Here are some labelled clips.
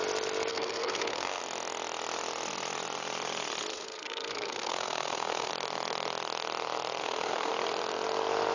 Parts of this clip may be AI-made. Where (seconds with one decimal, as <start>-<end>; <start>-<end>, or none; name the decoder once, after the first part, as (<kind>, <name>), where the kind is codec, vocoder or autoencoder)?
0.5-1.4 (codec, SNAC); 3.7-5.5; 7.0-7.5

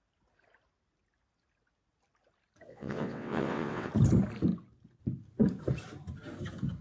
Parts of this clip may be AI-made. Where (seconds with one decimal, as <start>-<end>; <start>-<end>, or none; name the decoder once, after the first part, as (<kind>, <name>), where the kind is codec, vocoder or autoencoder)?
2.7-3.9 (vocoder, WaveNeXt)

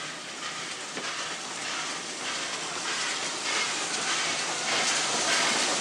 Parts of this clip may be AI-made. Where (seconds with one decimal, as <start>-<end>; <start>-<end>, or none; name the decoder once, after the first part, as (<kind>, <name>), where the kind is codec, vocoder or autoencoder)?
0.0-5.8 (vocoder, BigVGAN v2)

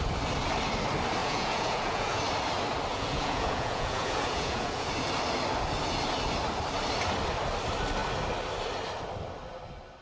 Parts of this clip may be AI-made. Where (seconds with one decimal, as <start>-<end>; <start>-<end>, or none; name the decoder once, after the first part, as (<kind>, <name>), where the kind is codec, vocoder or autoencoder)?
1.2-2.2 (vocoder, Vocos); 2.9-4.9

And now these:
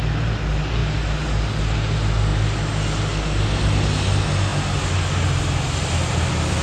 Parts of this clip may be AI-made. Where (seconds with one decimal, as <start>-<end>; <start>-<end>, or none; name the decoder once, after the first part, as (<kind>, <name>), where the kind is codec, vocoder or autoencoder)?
none